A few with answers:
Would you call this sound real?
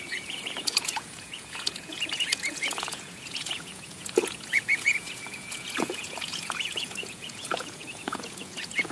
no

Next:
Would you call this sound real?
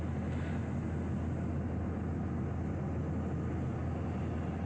yes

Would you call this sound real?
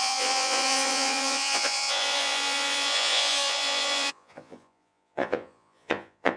no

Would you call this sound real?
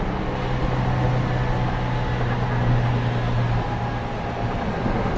yes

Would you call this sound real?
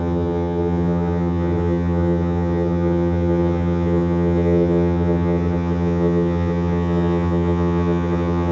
no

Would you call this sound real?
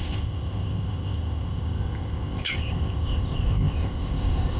no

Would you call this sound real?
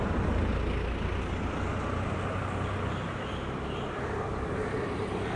yes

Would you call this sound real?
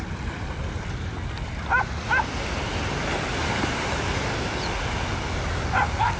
yes